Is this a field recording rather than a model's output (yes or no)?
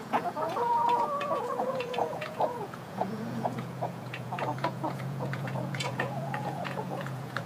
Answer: no